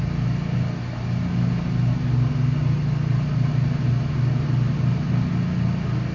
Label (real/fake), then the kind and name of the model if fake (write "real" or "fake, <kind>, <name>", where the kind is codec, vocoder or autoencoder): real